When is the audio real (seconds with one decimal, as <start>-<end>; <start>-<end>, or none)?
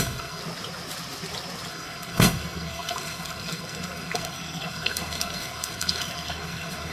0.4-1.7